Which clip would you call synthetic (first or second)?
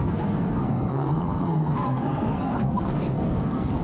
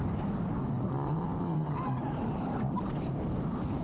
first